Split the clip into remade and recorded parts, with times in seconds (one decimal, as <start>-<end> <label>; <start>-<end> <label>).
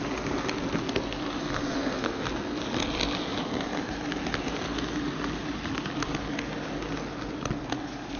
0.0-1.4 recorded; 1.4-2.2 remade; 2.2-8.2 recorded